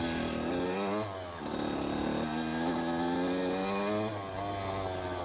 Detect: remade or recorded recorded